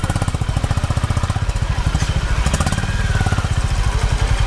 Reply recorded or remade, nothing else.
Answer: recorded